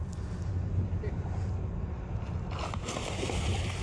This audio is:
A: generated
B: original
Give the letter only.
B